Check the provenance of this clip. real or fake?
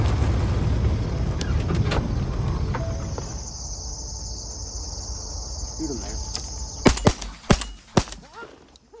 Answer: real